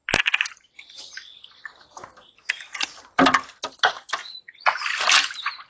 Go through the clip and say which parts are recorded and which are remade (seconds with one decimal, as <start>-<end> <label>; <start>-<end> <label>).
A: 0.0-4.2 recorded; 4.2-4.7 remade; 4.7-5.7 recorded